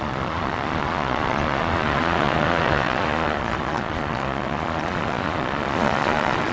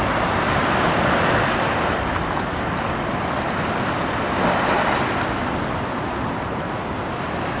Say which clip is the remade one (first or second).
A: first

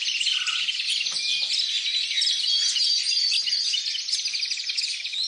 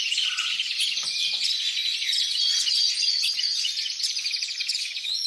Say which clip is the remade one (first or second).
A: second